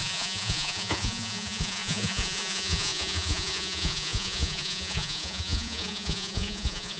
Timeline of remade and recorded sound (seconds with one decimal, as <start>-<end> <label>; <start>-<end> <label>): 0.0-7.0 remade